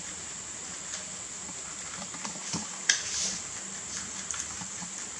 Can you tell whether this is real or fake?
real